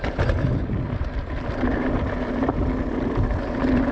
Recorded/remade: recorded